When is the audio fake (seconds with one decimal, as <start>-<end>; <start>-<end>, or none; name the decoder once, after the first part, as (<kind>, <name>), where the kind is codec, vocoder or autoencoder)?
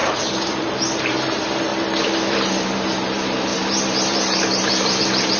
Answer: 0.0-1.7 (vocoder, BigVGAN v2); 2.3-5.4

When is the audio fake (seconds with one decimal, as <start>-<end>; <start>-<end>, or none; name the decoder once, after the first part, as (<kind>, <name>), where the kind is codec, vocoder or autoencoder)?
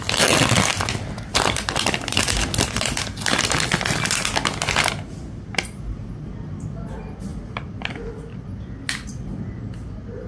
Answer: 0.7-2.2 (vocoder, BigVGAN v2); 7.3-7.9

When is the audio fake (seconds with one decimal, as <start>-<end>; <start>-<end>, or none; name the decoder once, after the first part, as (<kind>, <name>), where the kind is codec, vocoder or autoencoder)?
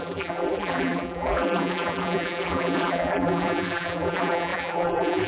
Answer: 0.0-5.3 (vocoder, BigVGAN v2)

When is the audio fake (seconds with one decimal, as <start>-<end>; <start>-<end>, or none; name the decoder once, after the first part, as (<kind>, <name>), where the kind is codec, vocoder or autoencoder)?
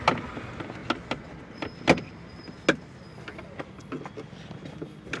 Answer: none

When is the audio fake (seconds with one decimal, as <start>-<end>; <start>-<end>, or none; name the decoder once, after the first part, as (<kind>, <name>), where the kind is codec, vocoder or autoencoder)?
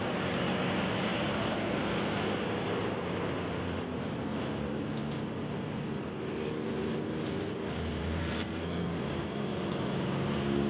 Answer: 8.2-8.9 (codec, SNAC)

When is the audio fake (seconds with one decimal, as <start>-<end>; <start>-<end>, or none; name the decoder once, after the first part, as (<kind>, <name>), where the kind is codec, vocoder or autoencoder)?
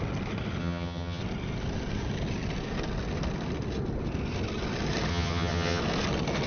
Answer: 0.6-1.2 (vocoder, HiFi-GAN); 5.1-5.8